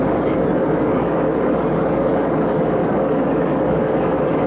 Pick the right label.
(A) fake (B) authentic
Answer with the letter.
A